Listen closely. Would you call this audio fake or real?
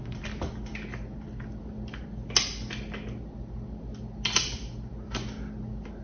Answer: real